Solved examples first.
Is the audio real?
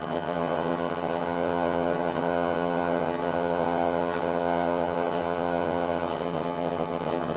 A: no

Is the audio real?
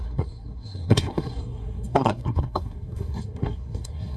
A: no